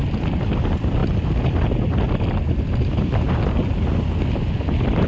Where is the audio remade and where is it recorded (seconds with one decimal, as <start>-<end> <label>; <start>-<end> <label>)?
0.0-5.1 recorded